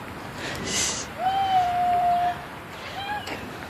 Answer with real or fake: fake